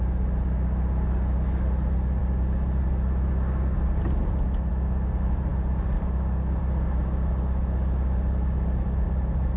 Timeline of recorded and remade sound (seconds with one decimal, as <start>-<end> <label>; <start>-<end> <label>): 0.0-9.6 recorded